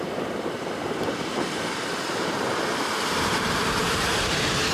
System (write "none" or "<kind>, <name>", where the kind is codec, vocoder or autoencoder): vocoder, BigVGAN v2